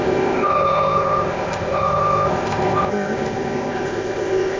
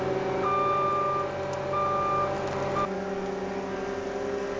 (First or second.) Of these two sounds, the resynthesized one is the first